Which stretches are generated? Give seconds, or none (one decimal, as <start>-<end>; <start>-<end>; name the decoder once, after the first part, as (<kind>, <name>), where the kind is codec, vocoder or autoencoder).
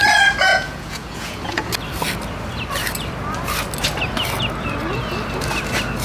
0.5-1.7 (vocoder, Vocos)